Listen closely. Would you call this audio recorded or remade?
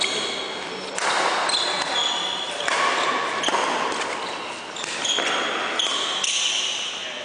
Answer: recorded